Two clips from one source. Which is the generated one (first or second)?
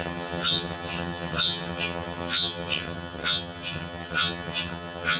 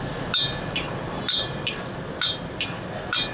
first